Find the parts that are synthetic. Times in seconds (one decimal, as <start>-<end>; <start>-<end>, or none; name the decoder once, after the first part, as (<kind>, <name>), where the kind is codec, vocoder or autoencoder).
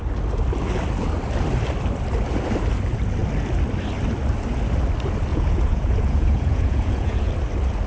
5.3-7.3 (vocoder, Vocos)